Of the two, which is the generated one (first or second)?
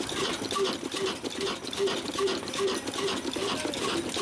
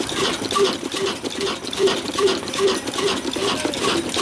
second